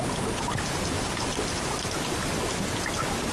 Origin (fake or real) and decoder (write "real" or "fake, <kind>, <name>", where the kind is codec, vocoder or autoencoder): real